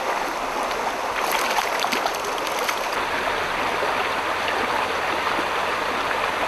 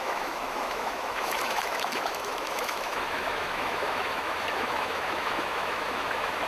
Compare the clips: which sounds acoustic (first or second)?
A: first